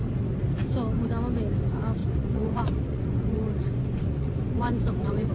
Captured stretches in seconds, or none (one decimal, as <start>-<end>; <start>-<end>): 0.0-2.0